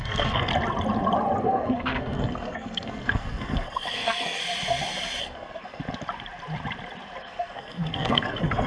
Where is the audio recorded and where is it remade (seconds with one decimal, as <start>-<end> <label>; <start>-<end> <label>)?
0.0-0.5 remade; 0.5-1.4 recorded; 1.4-4.4 remade; 4.4-5.2 recorded; 5.2-5.8 remade; 5.8-7.2 recorded; 7.2-8.7 remade